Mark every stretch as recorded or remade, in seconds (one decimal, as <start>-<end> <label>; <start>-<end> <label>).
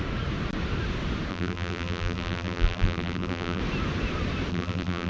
0.0-1.3 recorded; 1.3-3.6 remade; 3.6-4.5 recorded; 4.5-5.1 remade